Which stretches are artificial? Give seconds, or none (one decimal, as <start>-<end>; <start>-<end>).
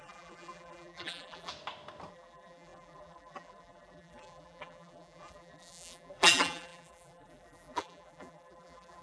0.0-1.5; 2.1-9.0